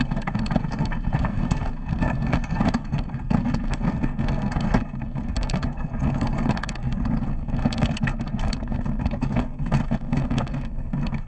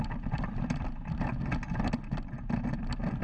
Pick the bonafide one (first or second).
second